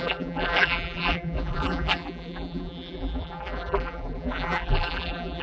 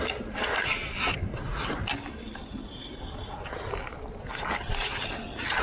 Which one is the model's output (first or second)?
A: first